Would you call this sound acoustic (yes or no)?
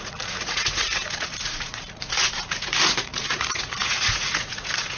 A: no